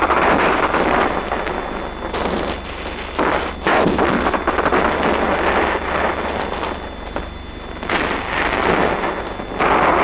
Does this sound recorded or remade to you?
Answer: recorded